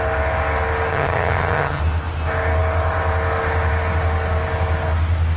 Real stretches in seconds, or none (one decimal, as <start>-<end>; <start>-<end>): 0.0-0.9; 1.8-5.4